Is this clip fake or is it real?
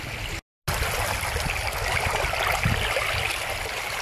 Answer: real